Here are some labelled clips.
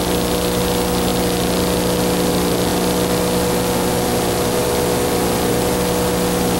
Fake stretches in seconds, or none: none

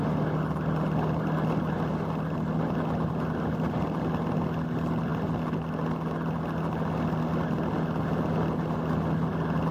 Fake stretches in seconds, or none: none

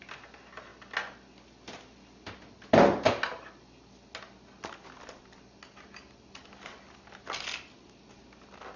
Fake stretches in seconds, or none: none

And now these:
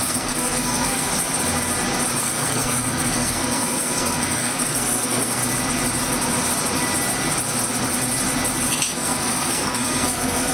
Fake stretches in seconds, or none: 0.0-1.1; 2.2-5.4; 8.7-10.5

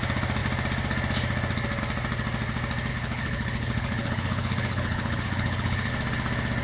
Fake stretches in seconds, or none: 2.9-5.9

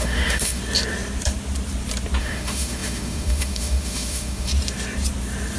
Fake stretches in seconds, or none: 0.0-0.6; 2.2-4.5